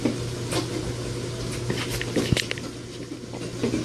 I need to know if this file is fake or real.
real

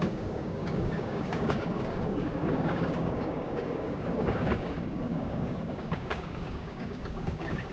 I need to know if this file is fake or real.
fake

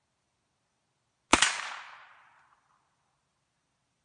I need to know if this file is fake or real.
real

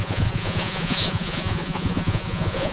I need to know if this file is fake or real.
fake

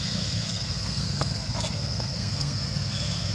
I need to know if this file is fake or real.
fake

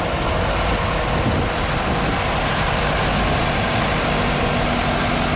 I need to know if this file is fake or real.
real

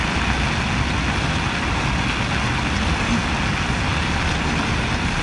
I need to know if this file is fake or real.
real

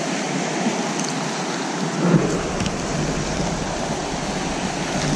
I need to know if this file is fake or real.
real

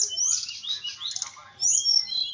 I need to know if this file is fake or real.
real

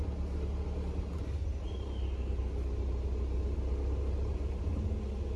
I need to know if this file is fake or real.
real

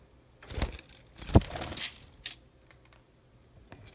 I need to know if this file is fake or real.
real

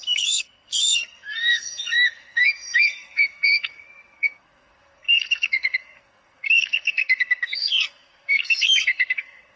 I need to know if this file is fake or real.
fake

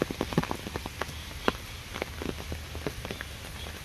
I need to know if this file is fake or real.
real